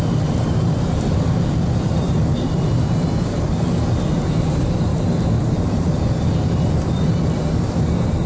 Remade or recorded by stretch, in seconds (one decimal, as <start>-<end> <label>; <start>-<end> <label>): 0.0-4.9 recorded; 4.9-5.5 remade; 5.5-8.3 recorded